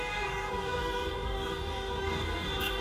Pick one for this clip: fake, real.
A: fake